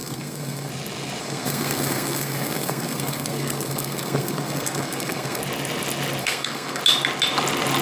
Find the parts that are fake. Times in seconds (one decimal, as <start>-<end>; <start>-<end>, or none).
0.0-0.7; 1.2-5.4; 6.2-6.8